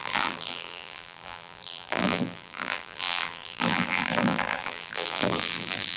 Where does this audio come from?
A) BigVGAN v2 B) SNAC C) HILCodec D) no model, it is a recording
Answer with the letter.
A